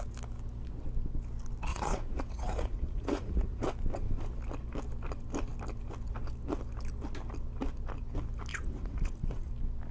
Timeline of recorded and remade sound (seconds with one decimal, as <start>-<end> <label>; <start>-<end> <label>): 0.0-1.7 recorded; 1.7-3.6 remade; 3.6-8.5 recorded; 8.5-9.5 remade; 9.5-9.9 recorded